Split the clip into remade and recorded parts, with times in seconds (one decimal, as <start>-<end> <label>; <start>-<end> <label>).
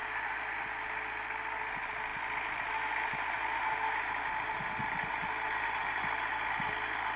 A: 0.0-7.2 recorded